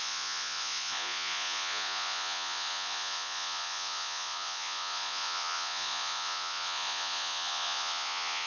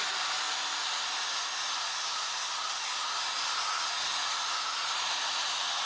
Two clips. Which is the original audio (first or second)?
second